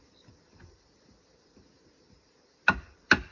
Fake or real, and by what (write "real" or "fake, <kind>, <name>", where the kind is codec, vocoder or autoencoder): real